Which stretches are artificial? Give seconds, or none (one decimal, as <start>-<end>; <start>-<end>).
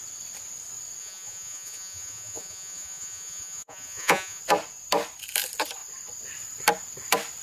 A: 1.0-4.4